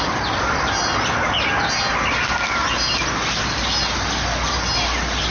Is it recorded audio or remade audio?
recorded